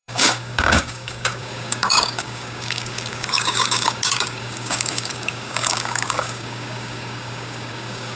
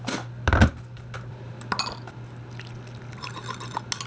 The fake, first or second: first